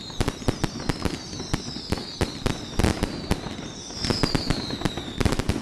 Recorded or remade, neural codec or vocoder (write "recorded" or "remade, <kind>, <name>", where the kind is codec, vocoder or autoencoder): remade, vocoder, BigVGAN v2